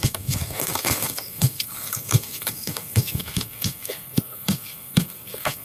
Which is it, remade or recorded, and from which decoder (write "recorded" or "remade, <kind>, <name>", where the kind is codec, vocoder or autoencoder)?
remade, codec, SNAC